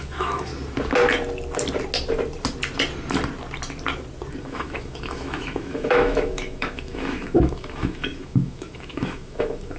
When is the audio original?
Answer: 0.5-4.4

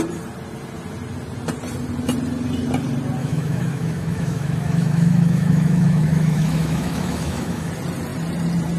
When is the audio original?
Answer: 0.0-3.2; 7.7-8.8

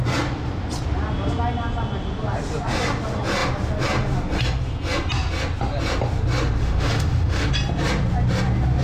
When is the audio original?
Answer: 0.0-6.6; 7.5-8.8

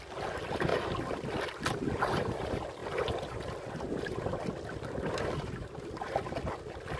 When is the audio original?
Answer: 0.0-7.0

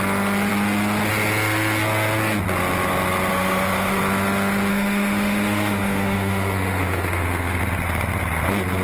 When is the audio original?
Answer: 0.0-3.3; 4.0-4.7; 7.6-8.8